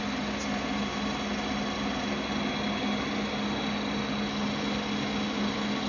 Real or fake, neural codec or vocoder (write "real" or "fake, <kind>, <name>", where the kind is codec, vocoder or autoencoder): real